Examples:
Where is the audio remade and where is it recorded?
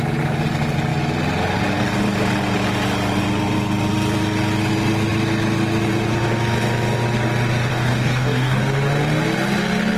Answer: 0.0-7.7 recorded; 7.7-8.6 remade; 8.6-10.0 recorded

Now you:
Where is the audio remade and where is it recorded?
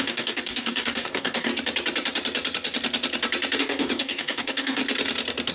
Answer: 0.0-1.5 remade; 1.5-3.6 recorded; 3.6-4.8 remade; 4.8-5.5 recorded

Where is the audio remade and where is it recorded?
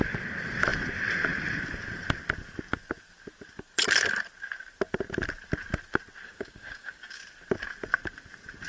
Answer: 0.0-6.3 recorded; 6.3-7.2 remade; 7.2-8.7 recorded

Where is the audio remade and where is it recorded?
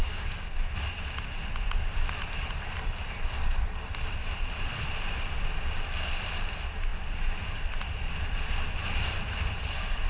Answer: 0.0-0.6 remade; 0.6-10.1 recorded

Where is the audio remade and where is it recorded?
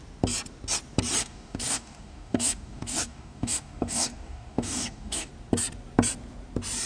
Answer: 0.0-1.2 recorded; 1.2-5.3 remade; 5.3-6.9 recorded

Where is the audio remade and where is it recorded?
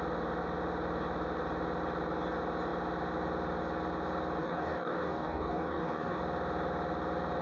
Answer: 0.0-4.4 recorded; 4.4-6.2 remade; 6.2-7.4 recorded